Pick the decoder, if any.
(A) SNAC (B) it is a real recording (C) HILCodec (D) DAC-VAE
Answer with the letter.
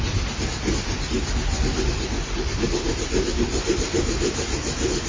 B